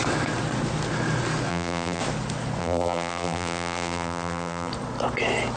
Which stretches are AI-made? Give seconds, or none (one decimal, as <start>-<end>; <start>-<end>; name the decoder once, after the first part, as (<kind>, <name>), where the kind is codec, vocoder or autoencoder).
1.5-2.0 (vocoder, BigVGAN v2); 2.6-4.7